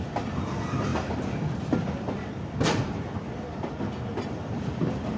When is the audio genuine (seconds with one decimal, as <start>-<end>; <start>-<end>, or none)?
0.0-5.2